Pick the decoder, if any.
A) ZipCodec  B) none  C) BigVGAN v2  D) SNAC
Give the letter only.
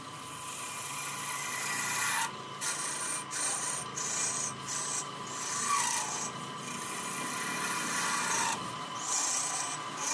B